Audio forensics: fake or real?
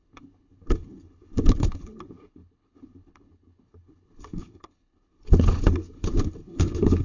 fake